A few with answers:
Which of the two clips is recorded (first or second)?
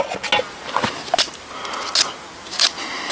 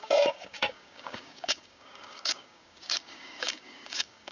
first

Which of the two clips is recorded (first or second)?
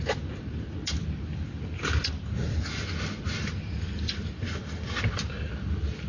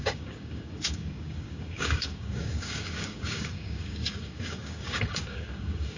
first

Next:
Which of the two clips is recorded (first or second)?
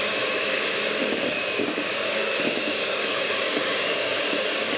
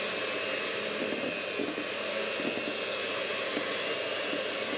second